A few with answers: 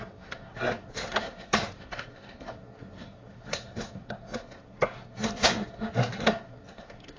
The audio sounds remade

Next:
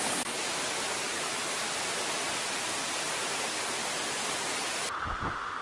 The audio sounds recorded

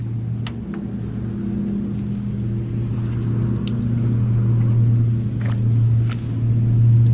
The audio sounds recorded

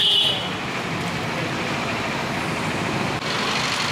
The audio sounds recorded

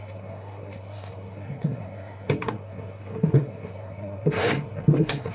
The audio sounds remade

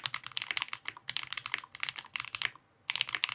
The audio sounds recorded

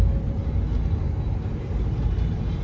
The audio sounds recorded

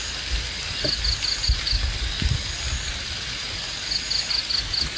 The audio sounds recorded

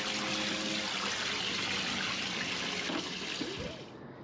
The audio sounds recorded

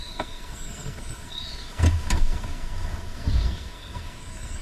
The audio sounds remade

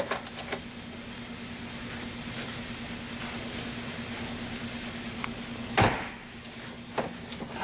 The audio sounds recorded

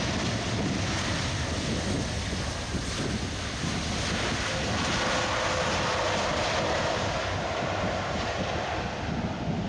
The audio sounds recorded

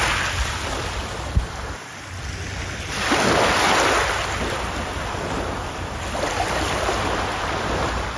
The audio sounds recorded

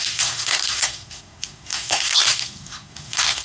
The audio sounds remade